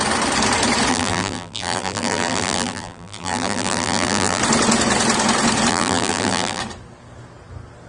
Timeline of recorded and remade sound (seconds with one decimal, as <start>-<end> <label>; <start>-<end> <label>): 0.0-0.9 recorded; 0.9-4.4 remade; 4.4-5.7 recorded; 5.7-6.6 remade; 6.6-7.9 recorded